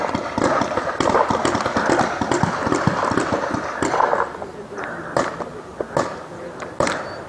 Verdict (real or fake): fake